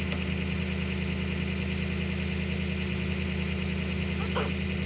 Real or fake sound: real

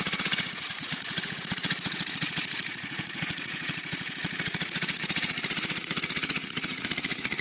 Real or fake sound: fake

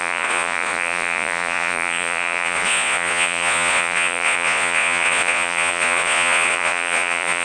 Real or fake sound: fake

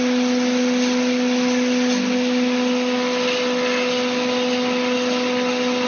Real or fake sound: real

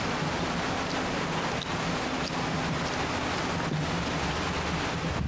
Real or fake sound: real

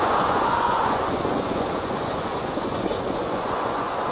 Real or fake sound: fake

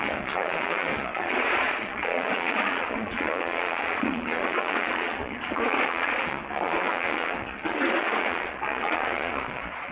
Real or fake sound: fake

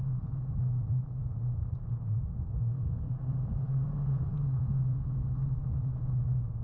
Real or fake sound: fake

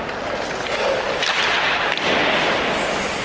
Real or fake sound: real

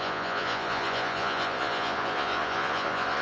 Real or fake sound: fake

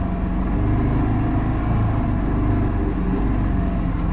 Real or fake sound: real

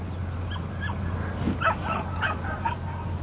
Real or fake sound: real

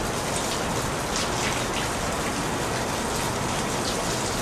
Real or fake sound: real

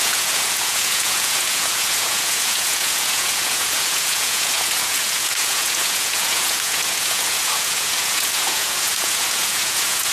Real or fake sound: fake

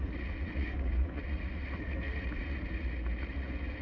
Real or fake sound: fake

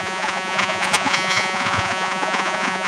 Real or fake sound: fake